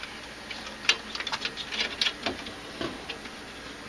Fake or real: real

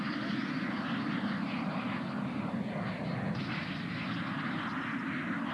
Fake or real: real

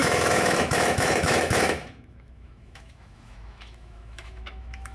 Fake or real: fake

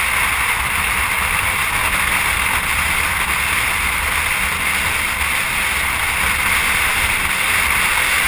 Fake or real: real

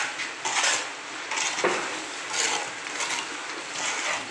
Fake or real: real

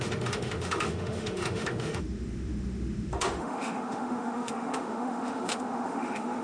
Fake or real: fake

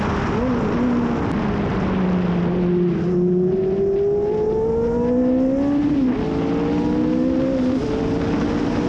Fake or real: real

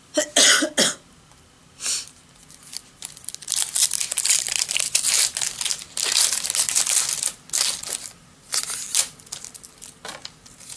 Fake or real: real